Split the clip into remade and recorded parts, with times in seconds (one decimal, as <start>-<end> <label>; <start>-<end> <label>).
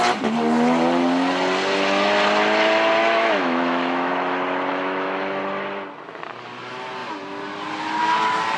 0.0-3.0 recorded; 3.0-4.1 remade; 4.1-4.7 recorded; 4.7-5.4 remade; 5.4-8.6 recorded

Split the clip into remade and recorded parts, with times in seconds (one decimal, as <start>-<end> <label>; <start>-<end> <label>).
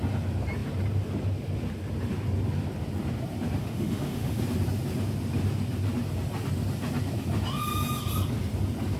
0.0-3.6 recorded; 3.6-4.4 remade; 4.4-9.0 recorded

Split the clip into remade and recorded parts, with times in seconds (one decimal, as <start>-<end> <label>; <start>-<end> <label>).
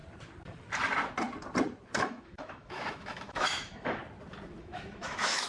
0.0-2.0 recorded; 2.0-4.0 remade; 4.0-4.6 recorded; 4.6-5.5 remade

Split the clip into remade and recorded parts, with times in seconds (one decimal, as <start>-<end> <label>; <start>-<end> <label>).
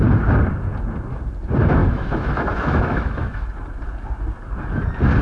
0.0-1.8 recorded; 1.8-3.5 remade; 3.5-5.2 recorded